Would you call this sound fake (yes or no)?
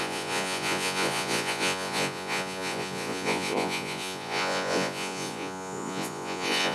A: yes